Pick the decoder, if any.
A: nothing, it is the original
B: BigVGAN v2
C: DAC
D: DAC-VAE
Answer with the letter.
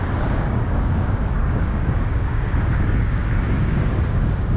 C